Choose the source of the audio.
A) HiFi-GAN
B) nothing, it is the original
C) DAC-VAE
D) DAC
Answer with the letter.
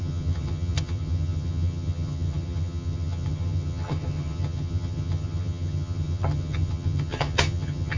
A